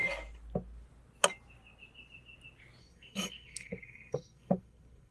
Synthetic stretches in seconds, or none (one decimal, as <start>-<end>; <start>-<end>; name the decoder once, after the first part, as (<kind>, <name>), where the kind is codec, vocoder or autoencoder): 2.8-5.1 (codec, SNAC)